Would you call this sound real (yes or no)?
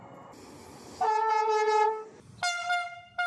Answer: yes